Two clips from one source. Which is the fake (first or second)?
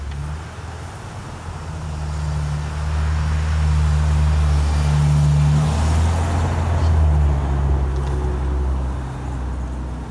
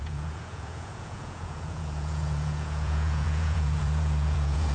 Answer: second